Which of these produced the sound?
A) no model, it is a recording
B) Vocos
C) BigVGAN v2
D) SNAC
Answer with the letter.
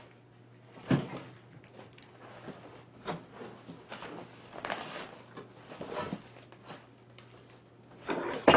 A